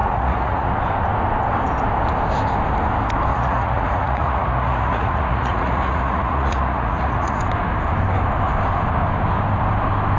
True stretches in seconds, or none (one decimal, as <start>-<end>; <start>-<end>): 0.7-3.3; 7.4-10.2